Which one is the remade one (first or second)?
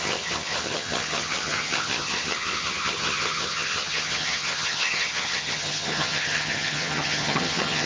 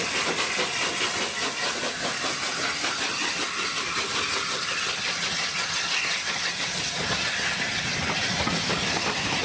first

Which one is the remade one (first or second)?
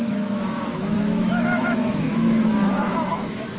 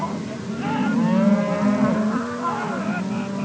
first